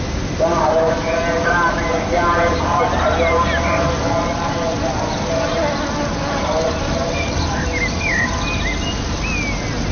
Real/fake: real